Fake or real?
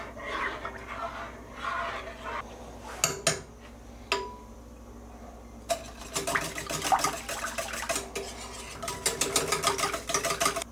real